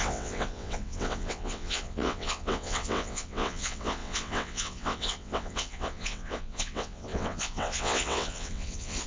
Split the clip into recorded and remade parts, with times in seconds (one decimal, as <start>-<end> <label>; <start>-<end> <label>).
0.0-9.1 remade